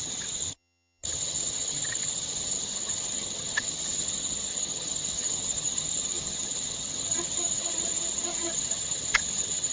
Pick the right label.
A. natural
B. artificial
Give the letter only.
B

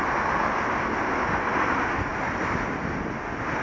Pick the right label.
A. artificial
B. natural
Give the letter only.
B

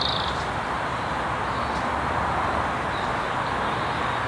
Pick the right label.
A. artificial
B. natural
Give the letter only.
A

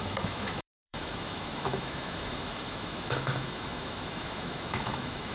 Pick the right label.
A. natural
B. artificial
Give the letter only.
B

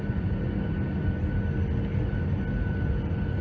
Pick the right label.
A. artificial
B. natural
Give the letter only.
B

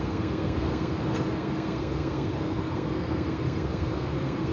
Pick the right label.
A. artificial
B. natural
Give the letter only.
A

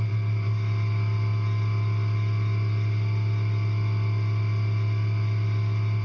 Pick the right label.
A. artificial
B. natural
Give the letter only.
B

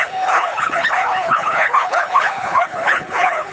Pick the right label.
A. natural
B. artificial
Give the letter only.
B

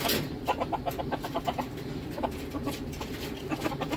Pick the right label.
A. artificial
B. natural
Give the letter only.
A